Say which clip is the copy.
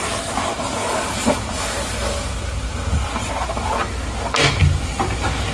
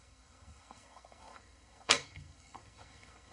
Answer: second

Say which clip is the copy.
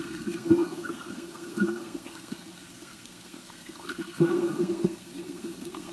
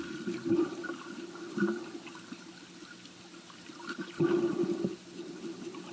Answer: first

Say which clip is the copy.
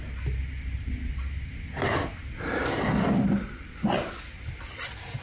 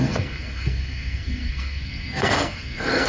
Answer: second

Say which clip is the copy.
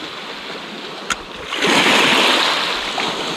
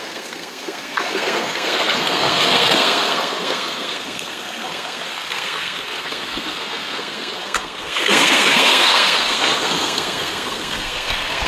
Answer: second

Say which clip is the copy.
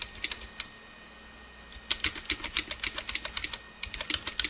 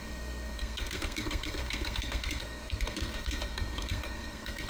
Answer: second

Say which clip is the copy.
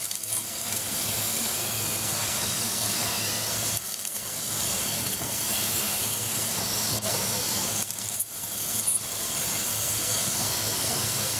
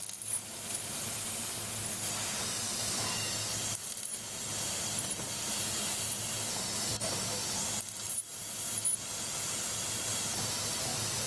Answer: first